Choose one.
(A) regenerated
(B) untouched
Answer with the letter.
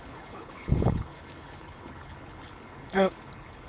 A